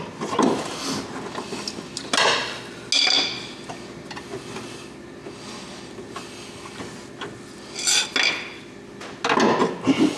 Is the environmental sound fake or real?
real